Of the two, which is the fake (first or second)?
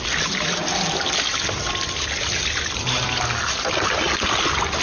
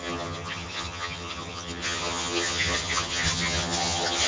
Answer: second